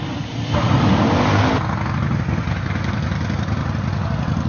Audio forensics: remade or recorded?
recorded